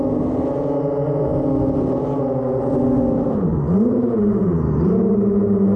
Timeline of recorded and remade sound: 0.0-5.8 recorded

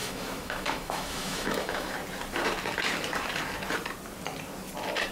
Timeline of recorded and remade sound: 0.0-1.9 remade; 1.9-5.1 recorded

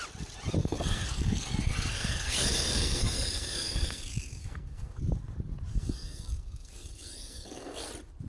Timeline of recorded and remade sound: 0.0-0.6 recorded; 0.6-5.0 remade; 5.0-5.7 recorded; 5.7-7.9 remade; 7.9-8.3 recorded

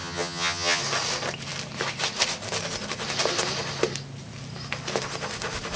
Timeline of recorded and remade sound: 0.0-0.8 remade; 0.8-5.8 recorded

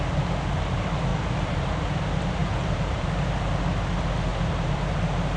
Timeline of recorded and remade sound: 0.0-1.1 recorded; 1.1-2.0 remade; 2.0-2.4 recorded; 2.4-3.3 remade; 3.3-4.3 recorded; 4.3-4.9 remade; 4.9-5.4 recorded

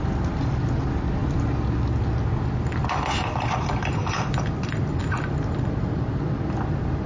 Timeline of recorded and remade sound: 0.0-7.1 recorded

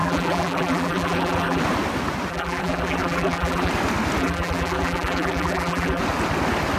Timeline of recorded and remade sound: 0.0-1.6 remade; 1.6-2.3 recorded; 2.3-3.7 remade; 3.7-4.2 recorded; 4.2-6.0 remade; 6.0-6.8 recorded

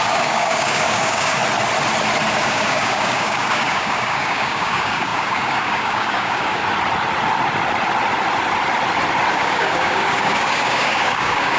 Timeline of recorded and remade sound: 0.0-1.4 remade; 1.4-2.3 recorded; 2.3-6.6 remade; 6.6-9.3 recorded; 9.3-11.6 remade